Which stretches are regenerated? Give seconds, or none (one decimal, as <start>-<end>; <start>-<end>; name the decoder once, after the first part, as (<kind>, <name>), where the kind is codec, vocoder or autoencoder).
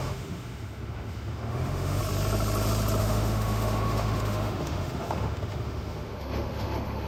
0.0-2.0 (autoencoder, DAC-VAE); 3.0-7.1